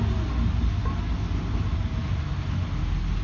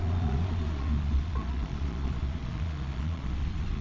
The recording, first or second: first